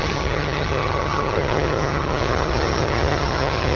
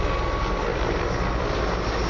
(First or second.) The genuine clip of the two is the second